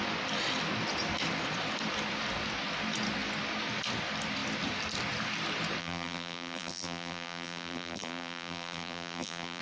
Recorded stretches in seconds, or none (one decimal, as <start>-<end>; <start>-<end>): 0.0-5.8